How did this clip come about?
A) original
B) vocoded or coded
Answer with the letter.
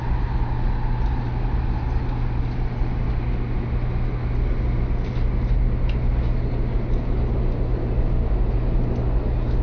A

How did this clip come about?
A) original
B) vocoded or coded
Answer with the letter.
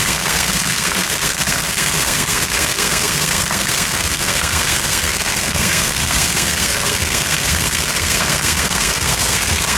B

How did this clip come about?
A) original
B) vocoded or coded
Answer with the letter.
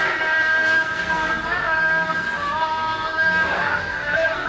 B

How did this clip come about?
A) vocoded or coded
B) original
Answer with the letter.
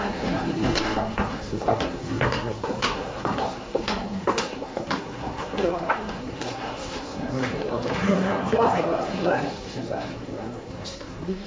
A